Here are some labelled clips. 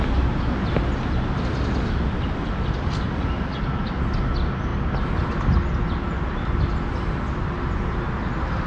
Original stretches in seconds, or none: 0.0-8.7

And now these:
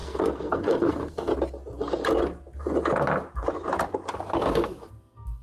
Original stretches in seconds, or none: 1.3-4.5

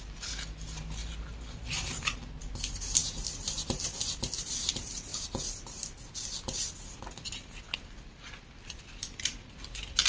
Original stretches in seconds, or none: 0.0-10.1

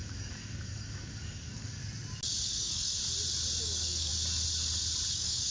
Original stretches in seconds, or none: 1.8-2.4; 3.0-3.6; 4.1-5.1

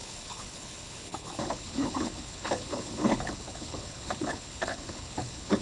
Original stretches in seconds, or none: none

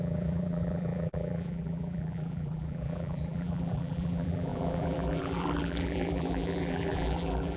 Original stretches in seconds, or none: none